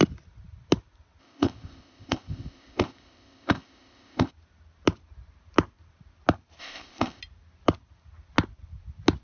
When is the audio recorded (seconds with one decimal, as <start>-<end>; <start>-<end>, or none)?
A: 0.0-1.2; 4.3-6.6; 7.2-9.2